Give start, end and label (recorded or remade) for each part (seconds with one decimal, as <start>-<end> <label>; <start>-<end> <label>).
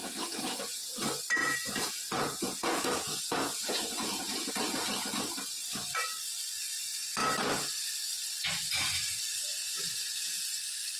0.0-0.9 remade; 0.9-1.4 recorded; 1.4-4.5 remade; 4.5-9.6 recorded; 9.6-10.4 remade; 10.4-11.0 recorded